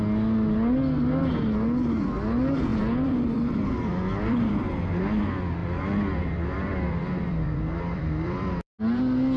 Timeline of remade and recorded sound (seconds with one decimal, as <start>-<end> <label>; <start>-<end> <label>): 0.0-2.7 recorded; 2.7-4.8 remade; 4.8-5.6 recorded; 5.6-8.8 remade; 8.8-9.4 recorded